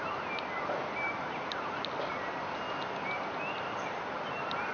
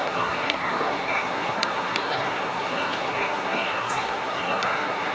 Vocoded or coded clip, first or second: second